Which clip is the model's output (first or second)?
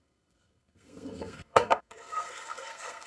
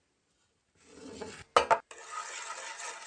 first